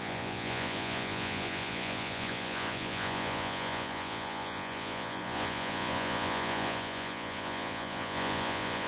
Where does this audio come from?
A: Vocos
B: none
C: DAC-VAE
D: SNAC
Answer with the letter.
A